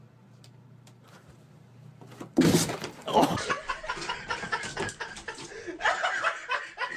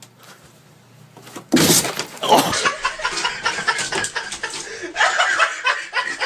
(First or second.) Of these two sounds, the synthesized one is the first